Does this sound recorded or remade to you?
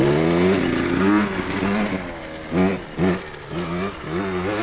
recorded